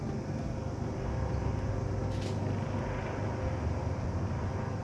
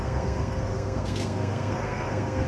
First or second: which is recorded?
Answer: first